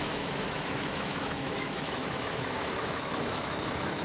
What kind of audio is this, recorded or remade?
remade